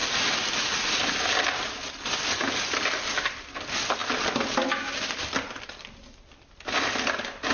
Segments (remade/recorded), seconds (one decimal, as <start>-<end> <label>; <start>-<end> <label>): 0.0-7.5 recorded